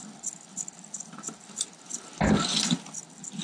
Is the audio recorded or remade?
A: recorded